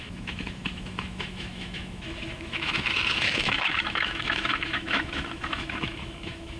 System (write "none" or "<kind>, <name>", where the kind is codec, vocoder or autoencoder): autoencoder, DAC-VAE